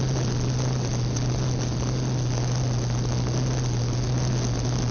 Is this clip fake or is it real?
real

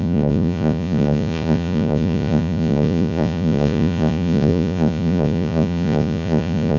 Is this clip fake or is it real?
fake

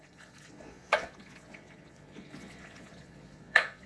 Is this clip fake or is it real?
fake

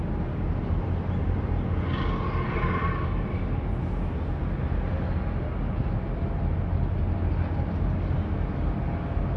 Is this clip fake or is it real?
real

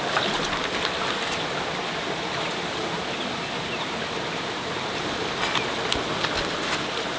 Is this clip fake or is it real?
real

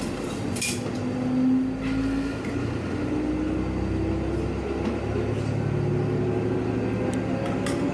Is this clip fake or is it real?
real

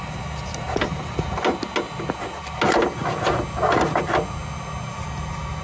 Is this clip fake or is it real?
real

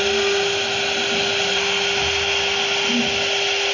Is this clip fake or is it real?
real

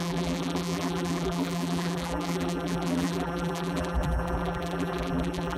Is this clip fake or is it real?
fake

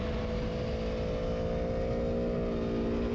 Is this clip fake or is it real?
real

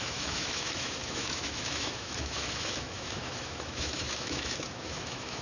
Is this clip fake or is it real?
fake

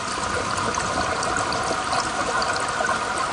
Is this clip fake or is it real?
real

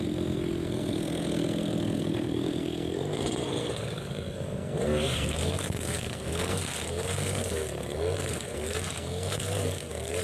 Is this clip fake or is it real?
fake